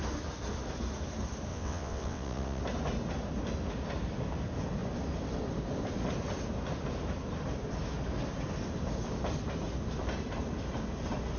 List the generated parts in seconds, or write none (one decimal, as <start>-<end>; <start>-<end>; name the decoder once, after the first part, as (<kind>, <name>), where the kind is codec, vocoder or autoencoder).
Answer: 1.5-2.6 (vocoder, WaveNeXt)